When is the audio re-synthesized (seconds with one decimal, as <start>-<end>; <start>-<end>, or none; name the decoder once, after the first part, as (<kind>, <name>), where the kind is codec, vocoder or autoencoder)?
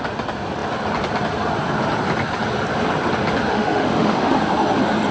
3.5-4.4 (autoencoder, DAC-VAE)